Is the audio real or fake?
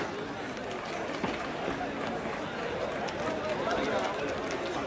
real